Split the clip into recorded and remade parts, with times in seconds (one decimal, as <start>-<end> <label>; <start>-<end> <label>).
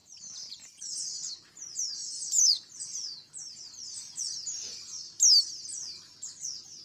0.0-1.3 remade; 1.3-2.0 recorded; 2.0-2.8 remade; 2.8-6.8 recorded